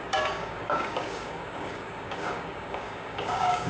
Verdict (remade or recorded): remade